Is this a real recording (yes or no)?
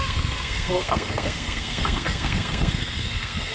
no